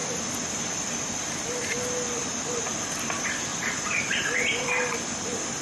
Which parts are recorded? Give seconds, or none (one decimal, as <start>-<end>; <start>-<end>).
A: 0.0-3.5; 4.8-5.6